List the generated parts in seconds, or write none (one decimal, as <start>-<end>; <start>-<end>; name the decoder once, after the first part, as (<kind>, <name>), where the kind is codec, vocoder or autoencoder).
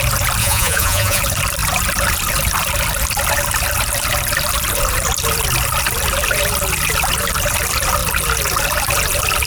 0.4-1.2 (vocoder, Vocos)